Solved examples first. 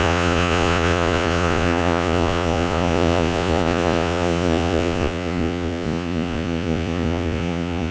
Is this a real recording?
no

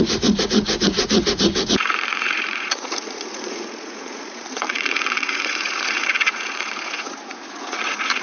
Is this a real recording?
no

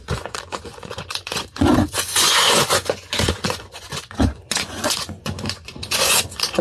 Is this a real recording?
no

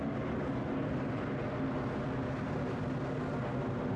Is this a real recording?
yes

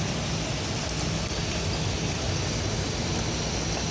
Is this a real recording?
yes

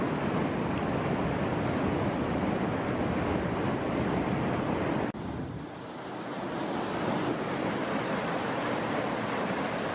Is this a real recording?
yes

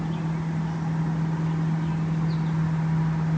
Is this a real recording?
yes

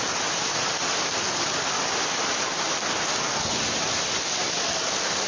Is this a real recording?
yes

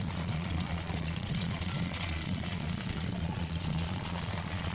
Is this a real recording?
no